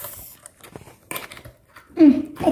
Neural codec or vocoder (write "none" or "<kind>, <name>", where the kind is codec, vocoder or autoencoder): none